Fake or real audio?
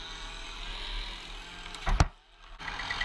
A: real